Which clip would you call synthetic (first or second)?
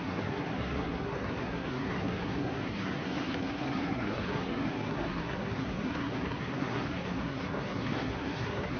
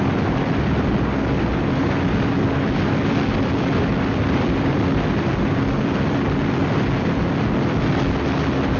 first